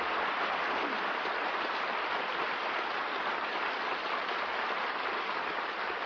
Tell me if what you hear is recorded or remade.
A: remade